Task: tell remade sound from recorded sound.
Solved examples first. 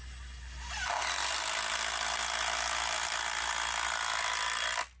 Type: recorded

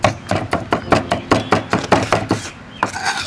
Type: recorded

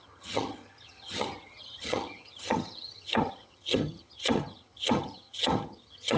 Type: remade